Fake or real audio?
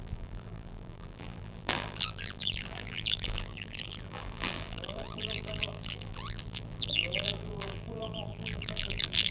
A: fake